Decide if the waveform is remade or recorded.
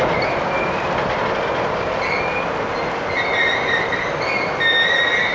recorded